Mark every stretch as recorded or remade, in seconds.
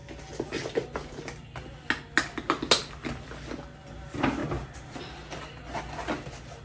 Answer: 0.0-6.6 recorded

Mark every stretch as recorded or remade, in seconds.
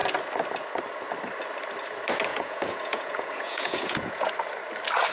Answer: 0.0-2.3 recorded; 2.3-4.3 remade; 4.3-5.1 recorded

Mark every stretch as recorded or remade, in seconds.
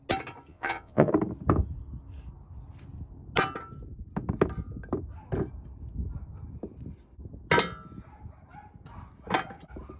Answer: 0.0-0.5 recorded; 0.5-1.1 remade; 1.1-10.0 recorded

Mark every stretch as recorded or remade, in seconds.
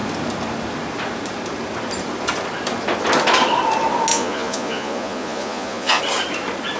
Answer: 0.0-4.1 recorded; 4.1-6.0 remade; 6.0-6.8 recorded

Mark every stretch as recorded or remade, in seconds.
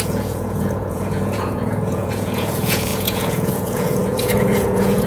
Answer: 0.0-5.1 remade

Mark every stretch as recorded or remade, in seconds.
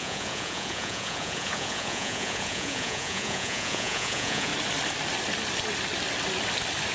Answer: 0.0-4.5 remade; 4.5-6.9 recorded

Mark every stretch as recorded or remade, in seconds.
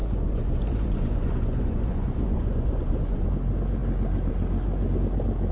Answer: 0.0-3.3 remade; 3.3-5.5 recorded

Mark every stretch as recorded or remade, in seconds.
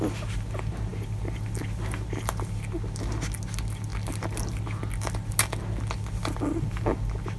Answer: 0.0-7.4 recorded